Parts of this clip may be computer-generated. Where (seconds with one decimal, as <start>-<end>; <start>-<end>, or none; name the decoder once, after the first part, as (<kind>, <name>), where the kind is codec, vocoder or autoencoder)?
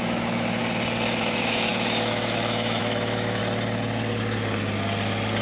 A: 0.0-0.6 (autoencoder, DAC-VAE); 1.2-3.4